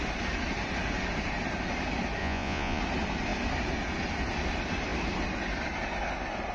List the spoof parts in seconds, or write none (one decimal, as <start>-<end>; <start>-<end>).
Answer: 2.2-2.8